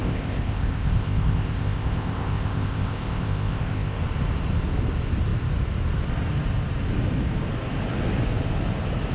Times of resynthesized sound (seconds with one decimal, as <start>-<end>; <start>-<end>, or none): 0.0-4.0